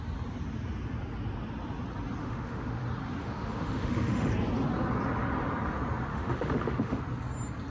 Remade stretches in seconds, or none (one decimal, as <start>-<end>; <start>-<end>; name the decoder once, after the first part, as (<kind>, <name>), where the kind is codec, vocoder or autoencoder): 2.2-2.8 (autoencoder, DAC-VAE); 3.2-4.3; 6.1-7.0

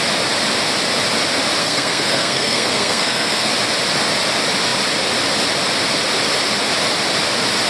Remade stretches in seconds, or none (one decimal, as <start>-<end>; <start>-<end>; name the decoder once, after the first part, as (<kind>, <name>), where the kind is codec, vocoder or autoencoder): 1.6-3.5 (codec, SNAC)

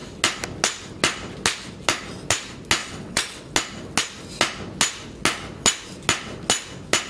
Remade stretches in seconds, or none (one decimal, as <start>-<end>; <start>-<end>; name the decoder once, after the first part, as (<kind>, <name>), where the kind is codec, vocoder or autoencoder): 2.8-3.5 (vocoder, WaveNeXt)